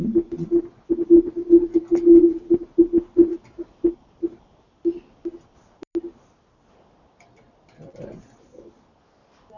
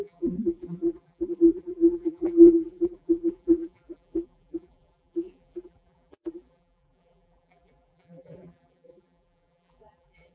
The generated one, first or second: second